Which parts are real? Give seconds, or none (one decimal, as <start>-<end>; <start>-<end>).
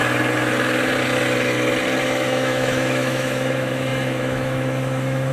0.0-2.0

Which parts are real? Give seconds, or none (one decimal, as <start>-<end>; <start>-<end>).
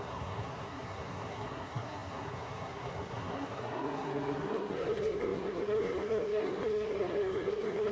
none